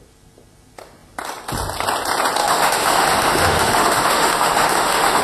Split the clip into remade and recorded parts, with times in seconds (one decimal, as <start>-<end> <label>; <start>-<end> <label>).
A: 0.0-2.4 recorded; 2.4-5.2 remade